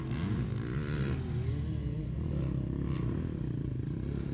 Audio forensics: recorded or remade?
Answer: recorded